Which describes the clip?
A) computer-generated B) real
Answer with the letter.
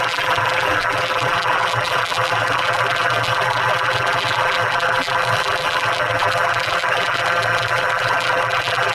A